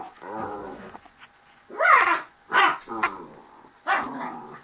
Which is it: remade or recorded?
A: remade